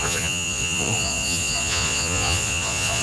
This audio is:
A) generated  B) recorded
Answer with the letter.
A